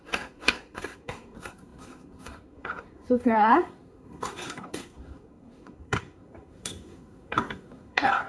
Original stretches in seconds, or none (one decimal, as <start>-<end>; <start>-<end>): none